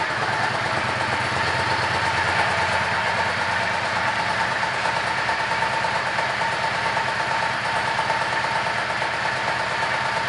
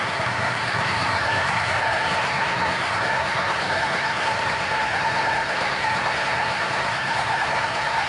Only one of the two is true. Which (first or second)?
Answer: first